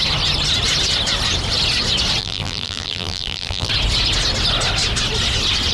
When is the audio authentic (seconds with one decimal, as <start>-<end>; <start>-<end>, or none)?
0.0-2.2; 3.7-5.7